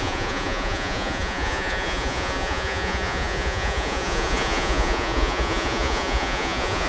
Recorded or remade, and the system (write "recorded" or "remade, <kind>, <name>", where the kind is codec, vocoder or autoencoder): remade, vocoder, Vocos